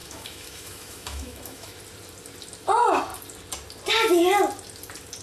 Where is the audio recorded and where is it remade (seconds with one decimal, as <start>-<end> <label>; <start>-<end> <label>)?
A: 0.0-1.8 remade; 1.8-5.2 recorded